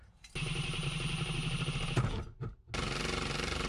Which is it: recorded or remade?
recorded